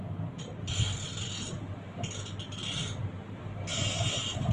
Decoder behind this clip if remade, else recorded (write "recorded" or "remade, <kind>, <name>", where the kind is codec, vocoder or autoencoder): recorded